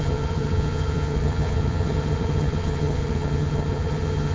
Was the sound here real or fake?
fake